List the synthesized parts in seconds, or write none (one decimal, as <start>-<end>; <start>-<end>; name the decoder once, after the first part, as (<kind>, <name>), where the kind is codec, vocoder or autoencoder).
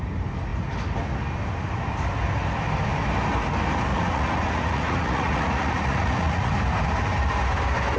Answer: 3.9-6.5 (vocoder, Vocos)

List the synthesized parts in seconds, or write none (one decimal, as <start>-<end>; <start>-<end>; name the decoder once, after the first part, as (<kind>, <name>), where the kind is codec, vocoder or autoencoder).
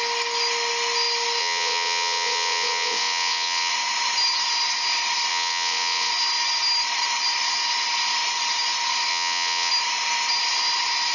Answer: 1.4-3.7 (vocoder, WaveNeXt); 5.3-6.1; 9.1-9.7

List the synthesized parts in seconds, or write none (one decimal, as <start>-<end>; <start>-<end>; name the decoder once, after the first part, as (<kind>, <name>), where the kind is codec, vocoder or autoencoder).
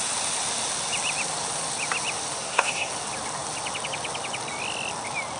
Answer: 2.4-2.9 (codec, SNAC)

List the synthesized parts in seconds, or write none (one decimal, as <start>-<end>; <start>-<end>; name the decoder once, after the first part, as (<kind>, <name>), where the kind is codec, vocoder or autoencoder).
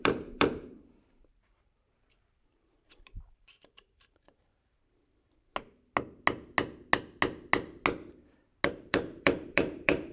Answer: 0.0-5.5 (vocoder, BigVGAN v2); 8.7-10.1